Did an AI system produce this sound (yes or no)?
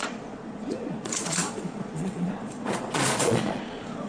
yes